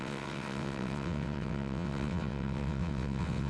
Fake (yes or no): yes